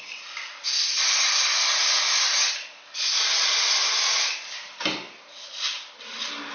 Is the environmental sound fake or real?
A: real